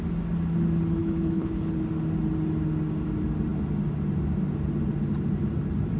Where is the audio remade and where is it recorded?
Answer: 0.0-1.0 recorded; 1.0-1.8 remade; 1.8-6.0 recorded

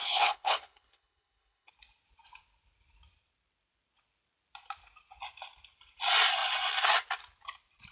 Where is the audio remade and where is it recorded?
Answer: 0.0-1.7 remade; 1.7-7.9 recorded

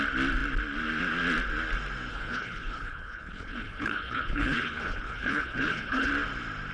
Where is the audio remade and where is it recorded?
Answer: 0.0-2.1 recorded; 2.1-6.1 remade; 6.1-6.7 recorded

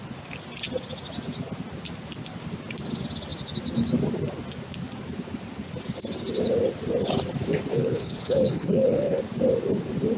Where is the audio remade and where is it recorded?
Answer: 0.0-7.7 recorded; 7.7-9.2 remade; 9.2-10.2 recorded

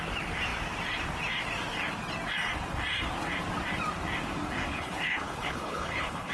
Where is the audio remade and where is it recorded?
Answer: 0.0-4.7 recorded; 4.7-6.3 remade

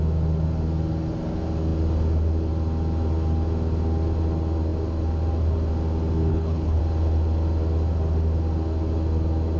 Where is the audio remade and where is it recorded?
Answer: 0.0-6.3 recorded; 6.3-6.8 remade; 6.8-9.6 recorded

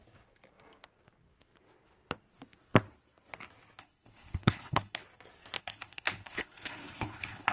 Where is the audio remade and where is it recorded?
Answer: 0.0-3.8 recorded; 3.8-5.0 remade; 5.0-5.6 recorded; 5.6-7.5 remade